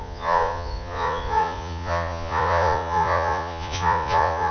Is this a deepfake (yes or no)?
yes